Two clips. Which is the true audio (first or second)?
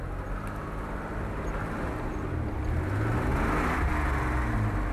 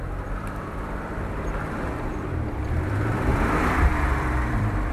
first